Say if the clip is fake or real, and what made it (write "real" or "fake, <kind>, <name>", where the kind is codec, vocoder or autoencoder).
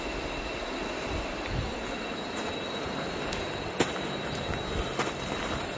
real